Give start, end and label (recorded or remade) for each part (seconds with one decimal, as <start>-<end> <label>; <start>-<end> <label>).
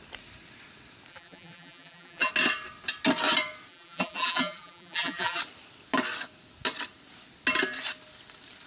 0.0-1.1 recorded; 1.1-2.3 remade; 2.3-3.7 recorded; 3.7-5.4 remade; 5.4-8.7 recorded